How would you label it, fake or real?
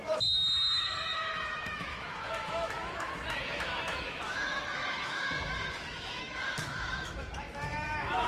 fake